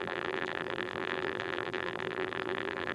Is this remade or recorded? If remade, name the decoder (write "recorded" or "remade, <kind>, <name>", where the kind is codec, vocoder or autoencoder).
remade, vocoder, BigVGAN v2